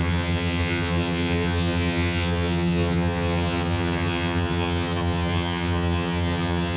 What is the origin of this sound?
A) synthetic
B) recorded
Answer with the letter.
A